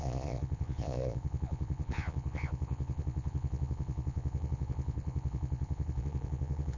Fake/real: fake